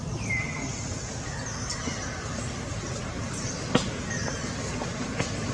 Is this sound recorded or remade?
recorded